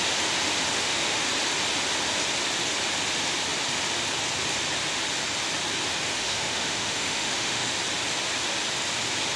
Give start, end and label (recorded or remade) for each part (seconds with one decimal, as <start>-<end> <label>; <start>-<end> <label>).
0.0-0.7 recorded; 0.7-1.3 remade; 1.3-6.1 recorded; 6.1-7.7 remade; 7.7-9.4 recorded